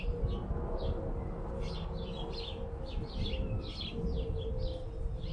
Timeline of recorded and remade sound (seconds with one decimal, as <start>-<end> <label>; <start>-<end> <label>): 0.0-5.3 recorded